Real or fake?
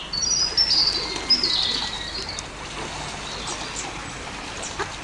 real